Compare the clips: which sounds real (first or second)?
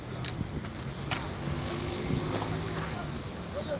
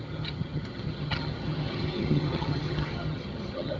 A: first